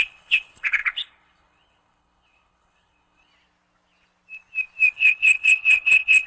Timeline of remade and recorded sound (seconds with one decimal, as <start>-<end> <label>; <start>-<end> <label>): 0.0-3.3 remade; 3.3-4.9 recorded; 4.9-6.3 remade